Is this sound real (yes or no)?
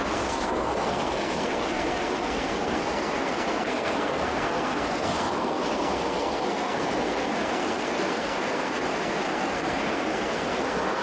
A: no